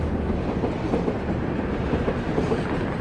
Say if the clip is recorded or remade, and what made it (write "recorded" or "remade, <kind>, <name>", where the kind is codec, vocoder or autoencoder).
recorded